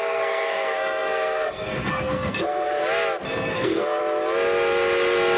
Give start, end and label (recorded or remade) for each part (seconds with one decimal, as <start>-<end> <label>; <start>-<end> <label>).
0.0-2.8 remade; 2.8-3.5 recorded; 3.5-4.0 remade; 4.0-5.4 recorded